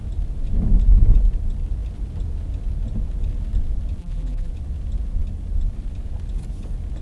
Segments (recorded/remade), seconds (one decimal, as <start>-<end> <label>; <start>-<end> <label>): 0.0-4.0 recorded; 4.0-4.5 remade; 4.5-7.0 recorded